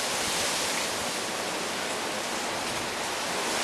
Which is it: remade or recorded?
recorded